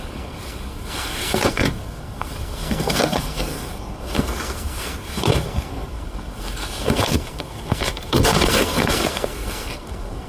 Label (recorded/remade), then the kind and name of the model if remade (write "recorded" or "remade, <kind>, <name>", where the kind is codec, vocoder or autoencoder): remade, codec, SNAC